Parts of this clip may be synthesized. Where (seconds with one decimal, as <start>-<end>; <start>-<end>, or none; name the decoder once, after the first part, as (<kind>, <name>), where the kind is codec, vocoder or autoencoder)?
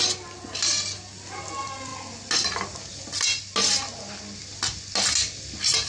none